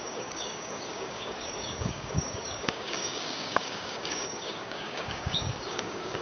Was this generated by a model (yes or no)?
yes